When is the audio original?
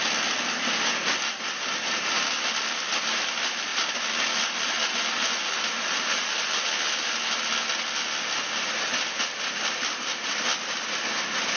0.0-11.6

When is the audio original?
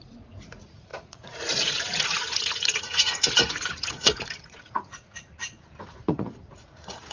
none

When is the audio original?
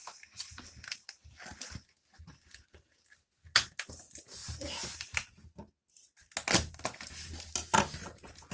0.0-8.5